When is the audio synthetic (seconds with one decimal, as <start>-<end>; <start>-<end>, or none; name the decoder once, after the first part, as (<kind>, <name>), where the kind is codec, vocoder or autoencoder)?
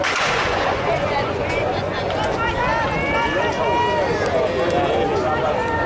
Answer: 0.0-2.3 (vocoder, Vocos)